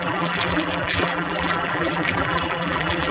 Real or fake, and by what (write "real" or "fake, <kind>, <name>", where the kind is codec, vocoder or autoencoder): fake, vocoder, BigVGAN v2